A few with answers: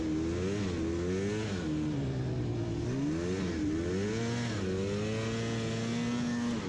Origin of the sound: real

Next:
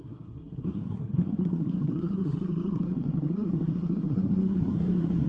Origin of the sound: fake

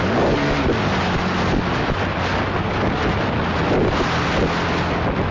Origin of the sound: real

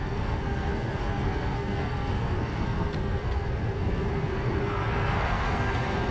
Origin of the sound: fake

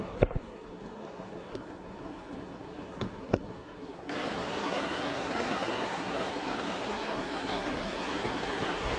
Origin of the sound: fake